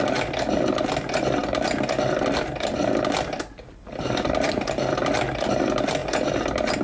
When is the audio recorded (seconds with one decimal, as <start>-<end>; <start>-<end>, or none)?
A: 0.0-6.8